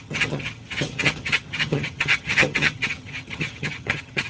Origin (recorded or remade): remade